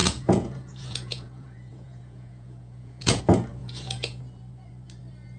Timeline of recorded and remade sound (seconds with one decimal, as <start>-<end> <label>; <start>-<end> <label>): 0.0-3.2 remade; 3.2-3.6 recorded; 3.6-4.2 remade; 4.2-5.4 recorded

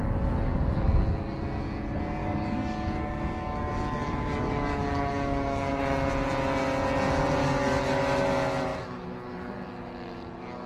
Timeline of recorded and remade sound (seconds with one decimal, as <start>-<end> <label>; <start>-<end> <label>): 0.0-2.2 recorded; 2.2-5.8 remade; 5.8-7.4 recorded; 7.4-8.0 remade; 8.0-10.7 recorded

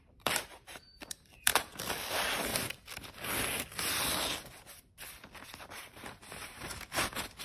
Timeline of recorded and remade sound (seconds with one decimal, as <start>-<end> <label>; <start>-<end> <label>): 0.0-1.5 remade; 1.5-2.1 recorded; 2.1-2.5 remade; 2.5-5.8 recorded; 5.8-7.4 remade

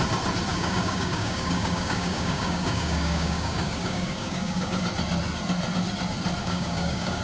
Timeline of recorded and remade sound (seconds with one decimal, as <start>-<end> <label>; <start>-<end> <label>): 0.0-0.5 recorded; 0.5-4.8 remade; 4.8-6.4 recorded; 6.4-7.2 remade

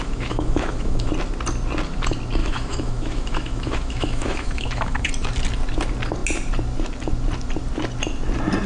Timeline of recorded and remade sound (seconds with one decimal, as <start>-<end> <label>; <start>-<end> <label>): 0.0-1.1 remade; 1.1-2.4 recorded; 2.4-5.1 remade; 5.1-8.7 recorded

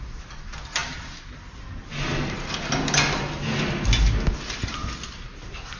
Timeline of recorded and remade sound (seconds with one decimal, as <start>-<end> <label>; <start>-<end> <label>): 0.0-5.8 recorded